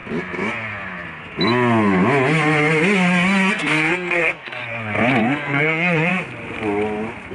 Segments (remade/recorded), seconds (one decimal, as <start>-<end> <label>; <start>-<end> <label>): 0.0-3.5 recorded; 3.5-4.6 remade; 4.6-5.2 recorded; 5.2-6.1 remade; 6.1-7.3 recorded